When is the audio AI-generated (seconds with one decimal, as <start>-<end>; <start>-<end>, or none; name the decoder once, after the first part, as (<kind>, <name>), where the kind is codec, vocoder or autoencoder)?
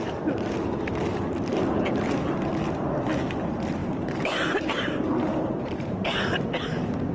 3.8-6.2 (vocoder, BigVGAN v2)